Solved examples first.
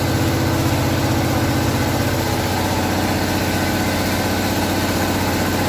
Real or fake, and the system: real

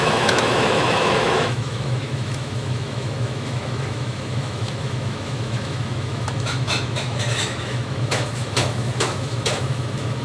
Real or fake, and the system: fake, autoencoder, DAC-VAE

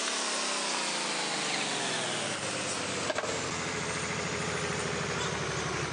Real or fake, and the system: real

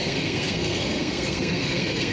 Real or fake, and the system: fake, codec, SNAC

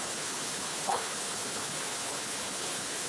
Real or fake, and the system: fake, codec, HILCodec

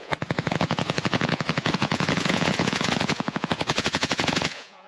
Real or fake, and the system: fake, vocoder, Vocos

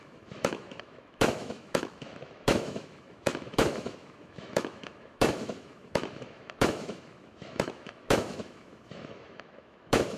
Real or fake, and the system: fake, autoencoder, DAC-VAE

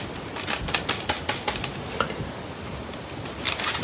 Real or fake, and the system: real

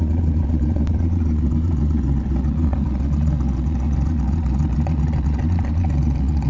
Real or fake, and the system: fake, vocoder, Vocos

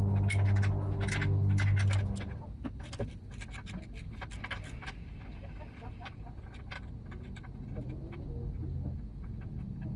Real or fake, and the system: real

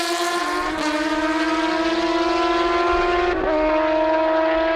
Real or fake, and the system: real